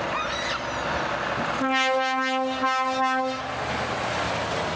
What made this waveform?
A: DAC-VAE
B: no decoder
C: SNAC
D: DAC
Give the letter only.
B